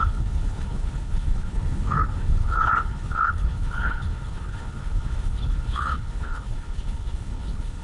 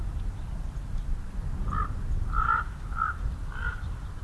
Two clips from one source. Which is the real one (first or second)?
second